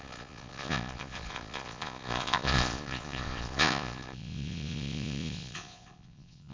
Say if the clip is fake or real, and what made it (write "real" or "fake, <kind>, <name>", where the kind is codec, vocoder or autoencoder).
fake, vocoder, Vocos